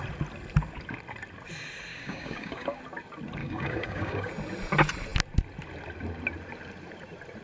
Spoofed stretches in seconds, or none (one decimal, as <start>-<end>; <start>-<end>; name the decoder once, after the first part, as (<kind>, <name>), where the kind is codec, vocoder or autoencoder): 1.9-2.8 (codec, DAC); 3.4-4.3